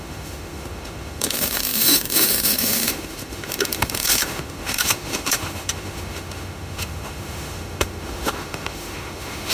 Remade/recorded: remade